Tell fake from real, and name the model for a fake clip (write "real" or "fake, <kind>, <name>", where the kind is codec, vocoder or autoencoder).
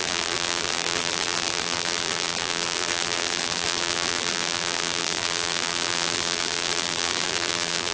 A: fake, vocoder, BigVGAN v2